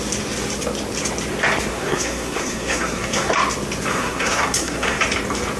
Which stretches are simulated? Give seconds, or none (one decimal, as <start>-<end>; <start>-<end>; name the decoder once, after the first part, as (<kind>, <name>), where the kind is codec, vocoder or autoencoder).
1.7-3.3 (codec, SNAC); 3.9-5.0